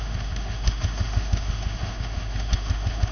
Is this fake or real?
fake